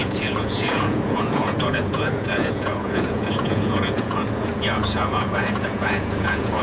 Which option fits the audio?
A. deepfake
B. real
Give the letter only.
A